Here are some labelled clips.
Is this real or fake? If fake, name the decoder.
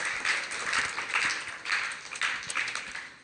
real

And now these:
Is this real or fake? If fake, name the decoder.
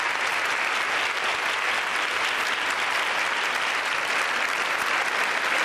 real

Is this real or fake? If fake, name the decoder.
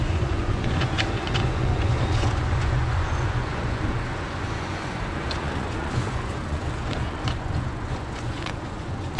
fake, vocoder, Vocos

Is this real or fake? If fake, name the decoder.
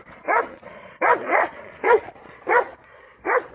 fake, vocoder, Vocos